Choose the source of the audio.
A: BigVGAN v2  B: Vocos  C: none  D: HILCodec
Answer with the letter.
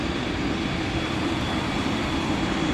A